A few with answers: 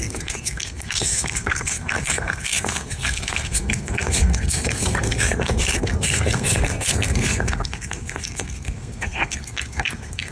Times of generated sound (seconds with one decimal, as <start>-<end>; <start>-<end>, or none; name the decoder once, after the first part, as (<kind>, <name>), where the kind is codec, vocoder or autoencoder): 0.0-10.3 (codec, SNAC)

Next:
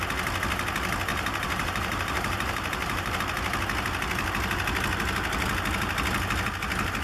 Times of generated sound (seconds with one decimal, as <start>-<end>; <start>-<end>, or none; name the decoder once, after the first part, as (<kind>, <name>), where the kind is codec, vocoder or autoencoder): 1.1-3.2 (vocoder, BigVGAN v2)

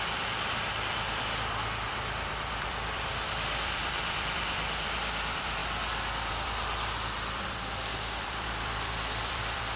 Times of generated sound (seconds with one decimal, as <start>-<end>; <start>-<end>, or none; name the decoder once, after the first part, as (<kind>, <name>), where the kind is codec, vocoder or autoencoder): 0.0-5.6 (vocoder, BigVGAN v2); 6.3-9.8

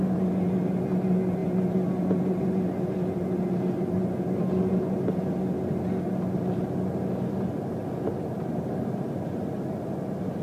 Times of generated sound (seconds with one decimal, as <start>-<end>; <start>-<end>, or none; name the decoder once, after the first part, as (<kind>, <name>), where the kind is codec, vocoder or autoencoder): none

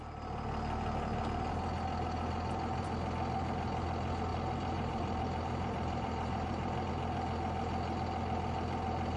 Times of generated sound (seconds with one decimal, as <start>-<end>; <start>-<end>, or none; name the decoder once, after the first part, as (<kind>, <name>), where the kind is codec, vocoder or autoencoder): 4.3-6.9 (vocoder, BigVGAN v2)

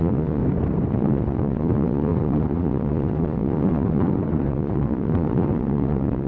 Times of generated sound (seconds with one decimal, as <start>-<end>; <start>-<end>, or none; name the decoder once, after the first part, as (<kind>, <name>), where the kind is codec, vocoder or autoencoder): 0.0-0.4 (vocoder, Vocos); 0.9-6.3

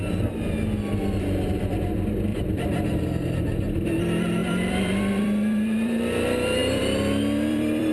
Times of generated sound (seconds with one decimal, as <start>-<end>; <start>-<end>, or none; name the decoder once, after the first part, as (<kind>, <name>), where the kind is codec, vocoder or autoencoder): 2.3-3.0 (vocoder, BigVGAN v2); 4.4-6.0; 6.6-7.9